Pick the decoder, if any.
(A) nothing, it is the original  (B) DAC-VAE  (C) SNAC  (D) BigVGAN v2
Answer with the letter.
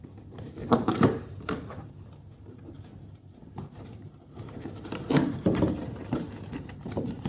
D